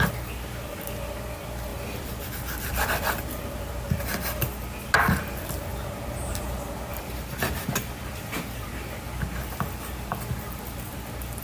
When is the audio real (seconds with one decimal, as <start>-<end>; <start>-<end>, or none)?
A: 0.0-1.7; 2.3-6.9; 8.7-11.4